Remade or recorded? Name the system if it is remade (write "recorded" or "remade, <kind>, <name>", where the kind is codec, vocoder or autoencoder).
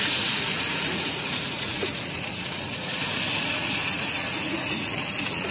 remade, vocoder, Vocos